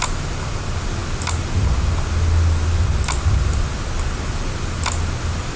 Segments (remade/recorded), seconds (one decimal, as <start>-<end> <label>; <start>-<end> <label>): 0.0-5.6 recorded